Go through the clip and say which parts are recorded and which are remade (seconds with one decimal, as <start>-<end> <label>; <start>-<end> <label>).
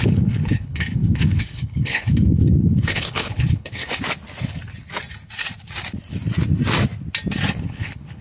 0.0-3.8 remade; 3.8-7.6 recorded; 7.6-8.2 remade